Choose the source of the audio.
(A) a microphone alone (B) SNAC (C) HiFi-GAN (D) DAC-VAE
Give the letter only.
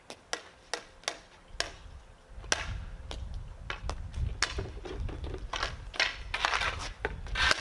A